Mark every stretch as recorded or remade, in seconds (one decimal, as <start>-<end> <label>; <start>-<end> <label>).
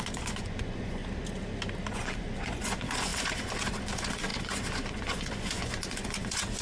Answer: 0.0-1.0 remade; 1.0-1.9 recorded; 1.9-6.6 remade